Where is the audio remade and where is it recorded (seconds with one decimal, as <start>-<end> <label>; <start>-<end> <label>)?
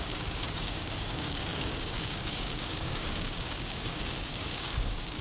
0.0-5.2 remade